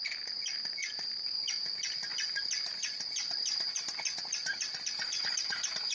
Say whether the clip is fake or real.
real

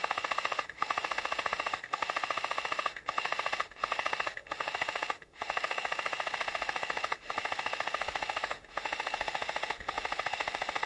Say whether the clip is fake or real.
fake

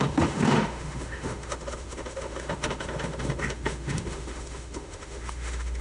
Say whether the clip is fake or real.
fake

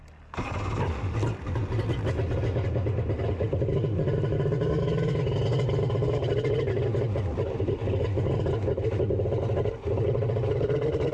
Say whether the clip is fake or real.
real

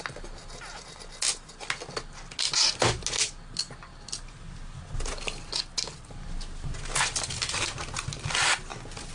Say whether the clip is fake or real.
real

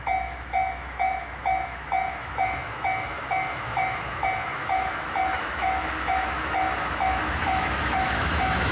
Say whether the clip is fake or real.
fake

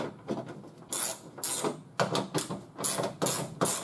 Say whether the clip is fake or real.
real